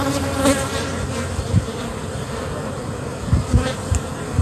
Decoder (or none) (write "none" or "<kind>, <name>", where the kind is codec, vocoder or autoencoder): none